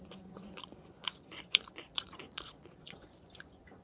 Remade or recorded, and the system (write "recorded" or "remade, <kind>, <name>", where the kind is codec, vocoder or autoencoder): remade, vocoder, Vocos